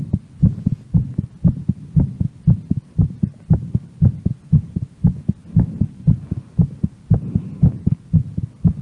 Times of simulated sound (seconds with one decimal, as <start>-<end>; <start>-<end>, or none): none